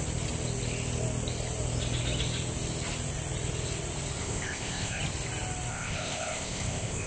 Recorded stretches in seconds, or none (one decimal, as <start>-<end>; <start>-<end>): 0.0-4.2; 5.0-5.7